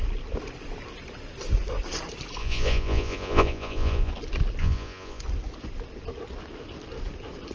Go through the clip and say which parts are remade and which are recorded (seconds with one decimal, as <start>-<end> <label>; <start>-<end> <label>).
0.0-2.4 recorded; 2.4-4.1 remade; 4.1-4.6 recorded; 4.6-5.2 remade; 5.2-7.5 recorded